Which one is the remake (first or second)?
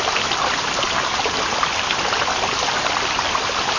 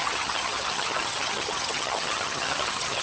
second